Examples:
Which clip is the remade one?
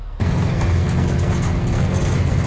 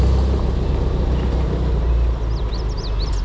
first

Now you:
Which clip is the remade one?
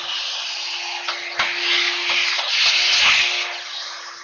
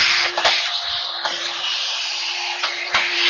second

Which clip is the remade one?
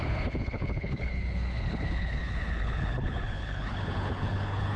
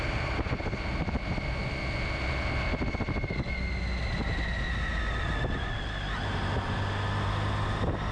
first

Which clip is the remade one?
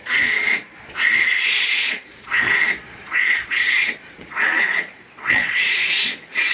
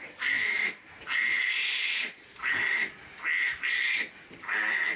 first